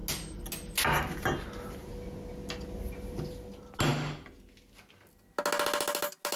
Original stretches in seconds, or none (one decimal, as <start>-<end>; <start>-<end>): 0.0-6.4